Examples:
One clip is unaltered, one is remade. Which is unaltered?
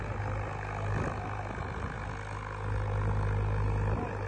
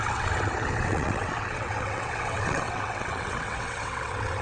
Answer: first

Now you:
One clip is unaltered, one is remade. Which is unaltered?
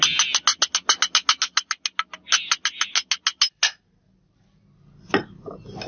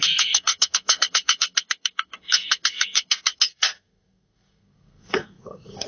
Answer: first